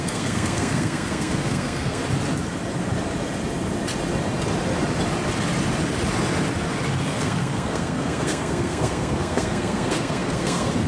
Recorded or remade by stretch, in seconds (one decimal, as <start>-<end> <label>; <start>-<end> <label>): 0.0-2.0 remade; 2.0-7.0 recorded; 7.0-10.9 remade

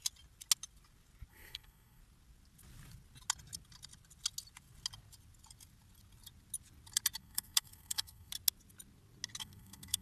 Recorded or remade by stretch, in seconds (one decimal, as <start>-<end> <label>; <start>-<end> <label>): 0.0-1.3 recorded; 1.3-2.0 remade; 2.0-7.2 recorded; 7.2-8.3 remade; 8.3-9.4 recorded; 9.4-10.0 remade

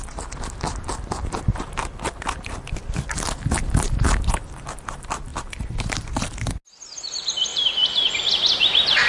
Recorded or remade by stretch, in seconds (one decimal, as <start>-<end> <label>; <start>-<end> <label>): 0.0-1.5 recorded; 1.5-2.5 remade; 2.5-5.3 recorded; 5.3-6.0 remade; 6.0-9.1 recorded

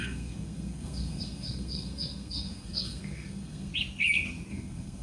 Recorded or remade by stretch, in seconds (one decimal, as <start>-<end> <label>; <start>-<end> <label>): 0.0-3.7 remade; 3.7-4.5 recorded; 4.5-5.0 remade

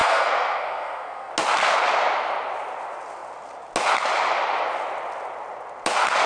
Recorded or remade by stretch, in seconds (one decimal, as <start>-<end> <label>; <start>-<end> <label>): 0.0-1.3 remade; 1.3-6.3 recorded

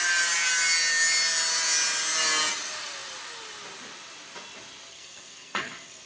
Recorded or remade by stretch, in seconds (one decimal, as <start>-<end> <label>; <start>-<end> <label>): 0.0-4.9 recorded; 4.9-6.1 remade